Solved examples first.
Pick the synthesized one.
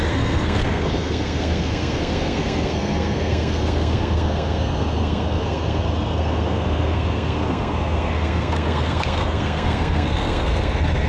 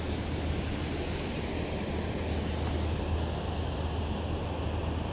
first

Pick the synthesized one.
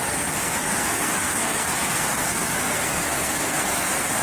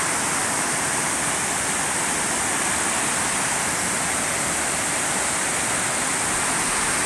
first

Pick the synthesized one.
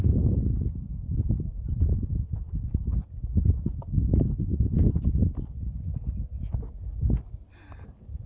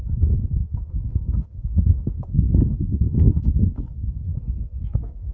second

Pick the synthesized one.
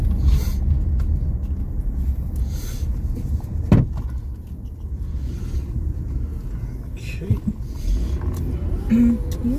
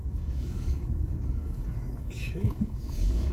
second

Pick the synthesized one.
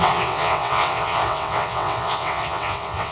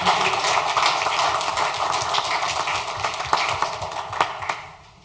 first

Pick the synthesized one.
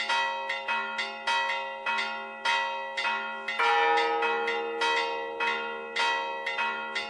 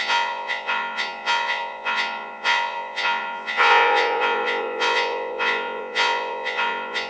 second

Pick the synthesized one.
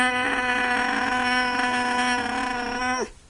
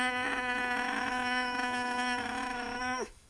second